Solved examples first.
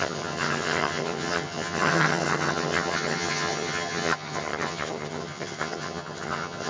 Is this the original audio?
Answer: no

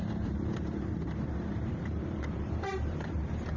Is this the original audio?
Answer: no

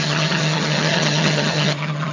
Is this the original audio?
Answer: no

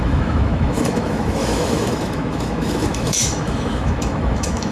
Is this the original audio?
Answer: no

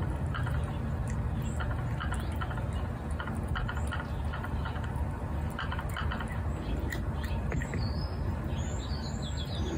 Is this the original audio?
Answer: yes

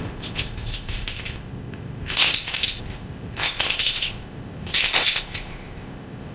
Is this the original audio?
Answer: no